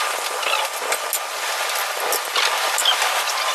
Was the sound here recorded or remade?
recorded